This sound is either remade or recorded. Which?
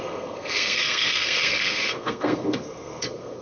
remade